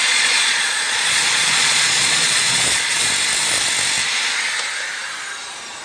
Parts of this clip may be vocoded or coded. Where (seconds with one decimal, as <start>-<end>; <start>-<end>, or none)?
0.0-3.1